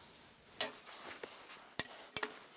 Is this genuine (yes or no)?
yes